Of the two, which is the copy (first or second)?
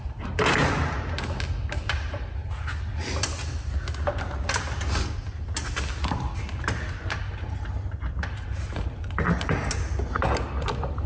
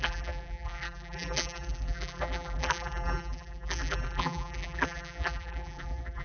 second